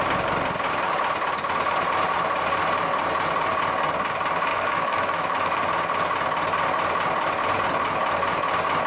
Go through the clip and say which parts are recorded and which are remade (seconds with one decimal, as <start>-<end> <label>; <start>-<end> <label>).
0.0-4.5 recorded; 4.5-5.6 remade; 5.6-8.9 recorded